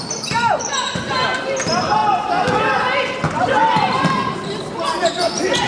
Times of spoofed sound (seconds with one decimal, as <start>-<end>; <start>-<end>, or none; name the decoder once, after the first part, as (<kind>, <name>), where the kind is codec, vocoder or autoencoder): none